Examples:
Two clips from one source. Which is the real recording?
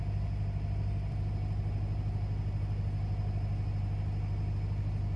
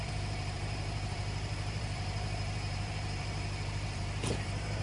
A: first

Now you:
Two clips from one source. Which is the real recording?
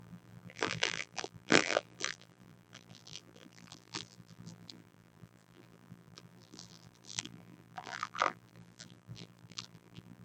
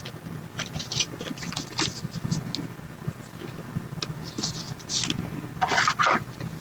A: second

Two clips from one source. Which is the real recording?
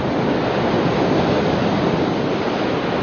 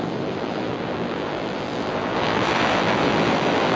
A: first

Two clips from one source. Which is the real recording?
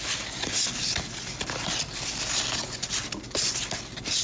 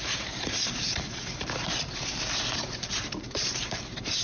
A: first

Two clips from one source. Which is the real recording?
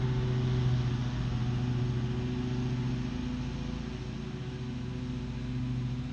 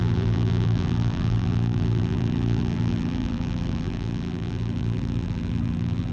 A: first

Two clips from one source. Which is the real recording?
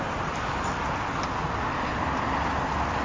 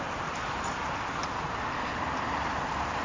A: first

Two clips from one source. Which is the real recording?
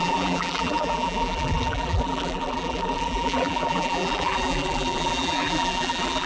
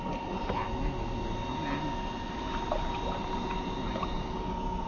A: second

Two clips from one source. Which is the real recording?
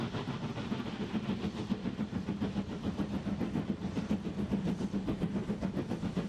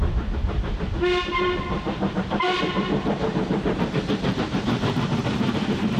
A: first